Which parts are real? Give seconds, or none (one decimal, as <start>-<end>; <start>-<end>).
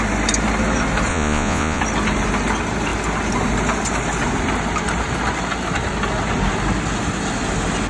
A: 0.0-1.1; 1.8-7.9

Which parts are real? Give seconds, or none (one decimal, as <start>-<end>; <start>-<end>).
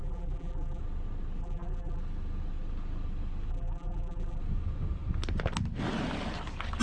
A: 0.8-1.4; 2.0-3.5; 4.4-6.8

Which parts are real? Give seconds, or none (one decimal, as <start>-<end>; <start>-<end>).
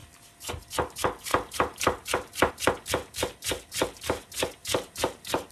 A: 0.0-1.3; 2.5-4.6